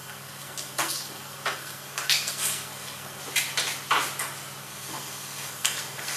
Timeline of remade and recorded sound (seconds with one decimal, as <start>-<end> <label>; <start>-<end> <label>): 0.0-3.2 remade; 3.2-4.6 recorded; 4.6-6.2 remade